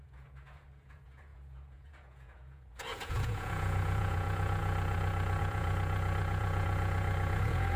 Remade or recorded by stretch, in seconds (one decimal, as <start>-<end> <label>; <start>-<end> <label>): 0.0-7.8 remade